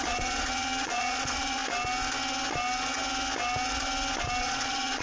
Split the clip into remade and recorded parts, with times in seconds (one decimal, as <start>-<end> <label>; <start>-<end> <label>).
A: 0.0-1.6 remade; 1.6-4.4 recorded; 4.4-5.0 remade